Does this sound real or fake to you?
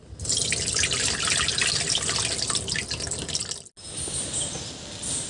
real